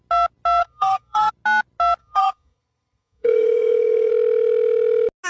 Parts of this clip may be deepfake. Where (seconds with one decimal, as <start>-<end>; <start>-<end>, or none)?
0.6-1.3; 2.0-4.1